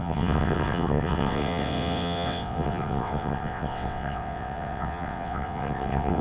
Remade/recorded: remade